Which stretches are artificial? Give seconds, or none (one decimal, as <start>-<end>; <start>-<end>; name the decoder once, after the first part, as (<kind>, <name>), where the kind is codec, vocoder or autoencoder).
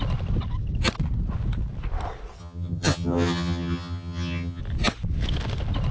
2.4-4.6 (vocoder, HiFi-GAN)